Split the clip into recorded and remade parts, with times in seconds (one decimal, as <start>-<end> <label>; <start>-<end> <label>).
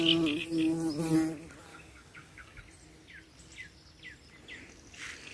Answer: 0.0-1.7 recorded; 1.7-2.6 remade; 2.6-5.3 recorded